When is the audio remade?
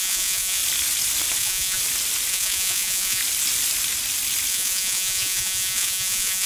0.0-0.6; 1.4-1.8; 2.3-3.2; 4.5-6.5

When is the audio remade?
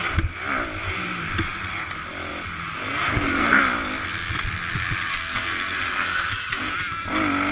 2.9-3.6; 5.1-6.7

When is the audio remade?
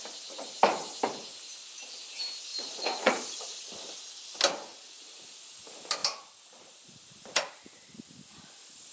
2.5-3.6; 4.7-5.3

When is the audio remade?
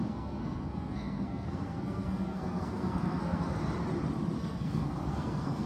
0.0-3.6; 4.4-5.7